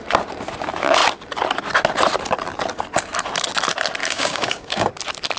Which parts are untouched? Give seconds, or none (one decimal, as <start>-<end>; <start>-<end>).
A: 0.0-4.0; 4.9-5.4